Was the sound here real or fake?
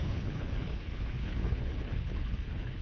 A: fake